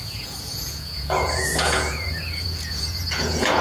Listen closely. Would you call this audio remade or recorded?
remade